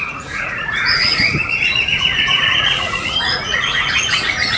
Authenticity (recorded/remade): remade